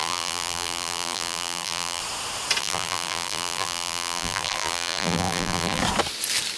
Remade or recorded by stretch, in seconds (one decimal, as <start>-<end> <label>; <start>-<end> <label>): 0.0-2.0 remade; 2.0-2.6 recorded; 2.6-5.8 remade; 5.8-6.6 recorded